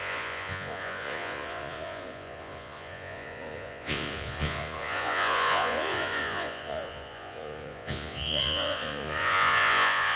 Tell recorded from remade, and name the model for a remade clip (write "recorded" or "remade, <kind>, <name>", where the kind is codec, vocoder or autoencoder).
remade, vocoder, Vocos